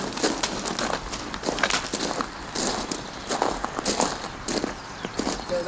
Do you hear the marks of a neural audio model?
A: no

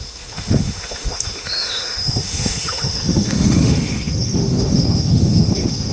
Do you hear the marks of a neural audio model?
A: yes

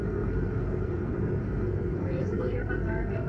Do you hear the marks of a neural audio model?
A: yes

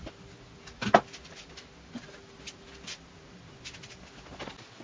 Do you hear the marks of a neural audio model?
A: no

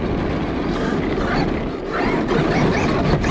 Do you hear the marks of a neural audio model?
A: no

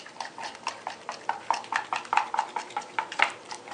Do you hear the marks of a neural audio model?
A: yes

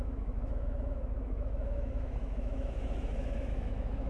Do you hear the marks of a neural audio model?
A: yes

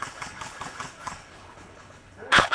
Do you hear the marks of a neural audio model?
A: yes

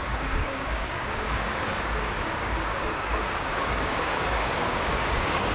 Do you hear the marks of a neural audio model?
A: yes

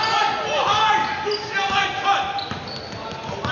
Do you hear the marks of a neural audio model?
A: no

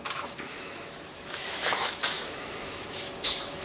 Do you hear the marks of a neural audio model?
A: yes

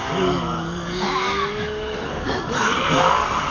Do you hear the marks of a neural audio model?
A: yes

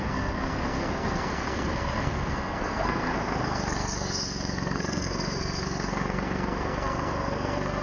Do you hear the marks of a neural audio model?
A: yes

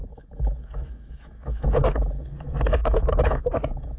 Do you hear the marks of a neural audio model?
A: yes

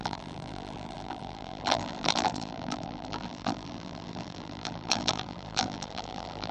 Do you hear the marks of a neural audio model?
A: yes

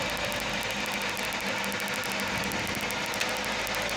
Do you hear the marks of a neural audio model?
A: no